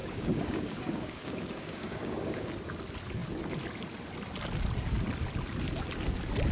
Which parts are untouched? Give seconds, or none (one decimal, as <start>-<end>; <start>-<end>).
2.5-6.5